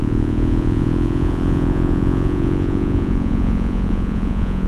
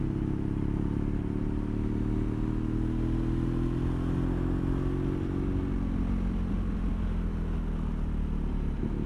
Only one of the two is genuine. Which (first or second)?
second